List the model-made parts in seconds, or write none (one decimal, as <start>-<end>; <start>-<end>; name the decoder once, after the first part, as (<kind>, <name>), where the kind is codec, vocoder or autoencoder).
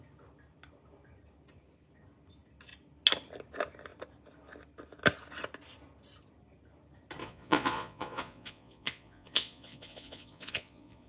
7.2-11.1 (vocoder, Vocos)